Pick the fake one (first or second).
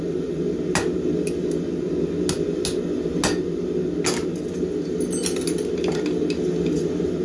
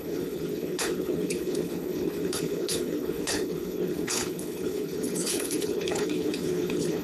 second